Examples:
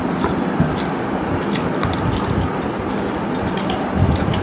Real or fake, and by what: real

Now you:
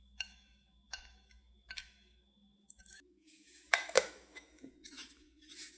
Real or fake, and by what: fake, autoencoder, DAC-VAE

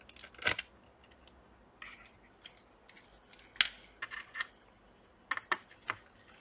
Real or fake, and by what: real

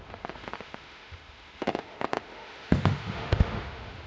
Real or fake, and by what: fake, autoencoder, DAC-VAE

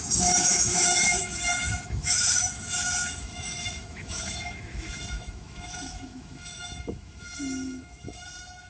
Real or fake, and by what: fake, autoencoder, DAC-VAE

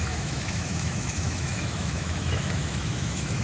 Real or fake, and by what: fake, autoencoder, DAC-VAE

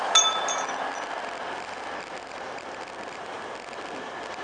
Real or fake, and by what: real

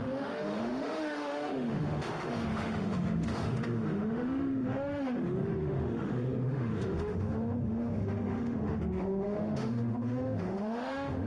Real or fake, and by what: fake, autoencoder, DAC-VAE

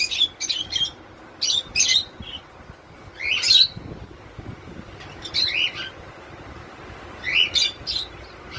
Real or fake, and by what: real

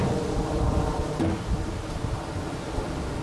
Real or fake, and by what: real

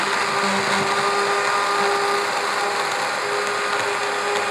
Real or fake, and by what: real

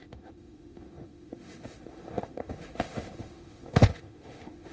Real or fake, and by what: fake, autoencoder, DAC-VAE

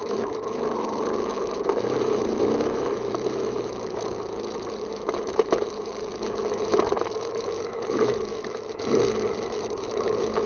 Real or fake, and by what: fake, autoencoder, DAC-VAE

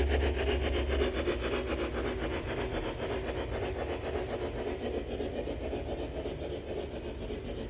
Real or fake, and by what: real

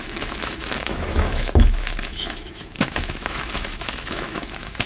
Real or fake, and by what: fake, autoencoder, DAC-VAE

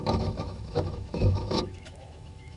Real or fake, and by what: fake, autoencoder, DAC-VAE